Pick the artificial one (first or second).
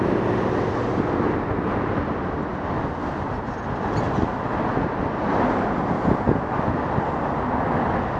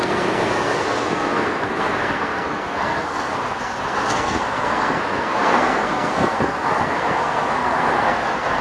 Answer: second